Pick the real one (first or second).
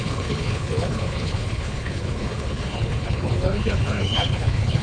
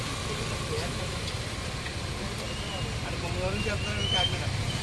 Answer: second